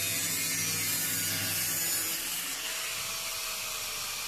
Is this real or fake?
real